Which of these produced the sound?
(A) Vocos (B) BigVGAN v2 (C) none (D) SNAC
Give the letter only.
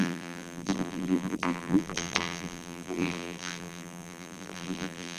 B